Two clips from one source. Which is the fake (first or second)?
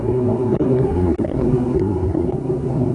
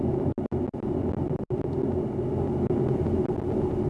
first